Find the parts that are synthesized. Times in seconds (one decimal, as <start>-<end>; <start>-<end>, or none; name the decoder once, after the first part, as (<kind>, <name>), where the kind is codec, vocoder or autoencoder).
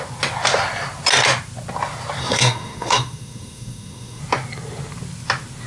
2.2-4.2 (codec, SNAC)